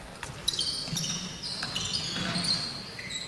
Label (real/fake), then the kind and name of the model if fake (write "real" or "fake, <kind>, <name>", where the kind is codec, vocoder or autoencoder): real